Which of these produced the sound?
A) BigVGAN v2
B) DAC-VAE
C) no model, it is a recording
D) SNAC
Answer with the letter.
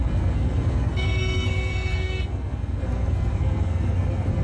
D